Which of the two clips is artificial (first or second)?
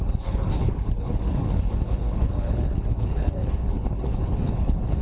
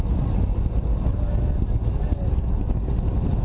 first